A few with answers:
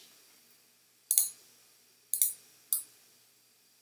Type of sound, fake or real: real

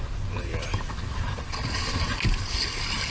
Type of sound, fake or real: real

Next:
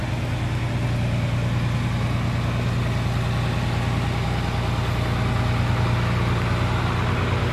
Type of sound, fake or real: real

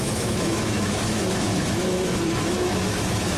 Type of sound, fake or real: fake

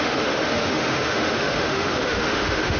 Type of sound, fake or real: fake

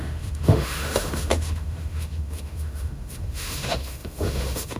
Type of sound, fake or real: fake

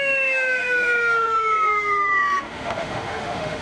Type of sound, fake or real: fake